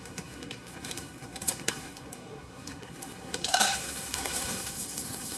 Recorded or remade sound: remade